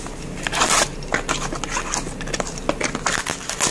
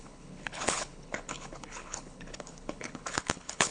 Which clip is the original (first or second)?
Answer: first